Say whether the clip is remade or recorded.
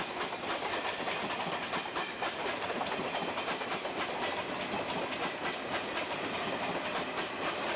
recorded